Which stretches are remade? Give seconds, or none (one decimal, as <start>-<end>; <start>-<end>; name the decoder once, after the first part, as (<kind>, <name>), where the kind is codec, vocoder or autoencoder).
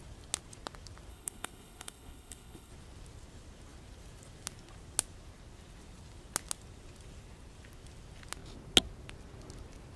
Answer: 1.1-2.7 (codec, HILCodec)